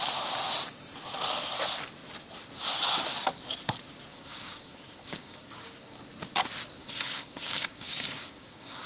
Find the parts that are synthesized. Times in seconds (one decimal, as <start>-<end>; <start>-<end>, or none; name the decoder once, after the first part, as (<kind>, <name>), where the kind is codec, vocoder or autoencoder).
4.1-6.0 (codec, DAC); 6.8-8.9